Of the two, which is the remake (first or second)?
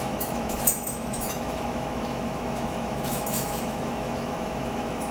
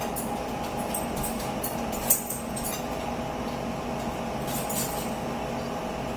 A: first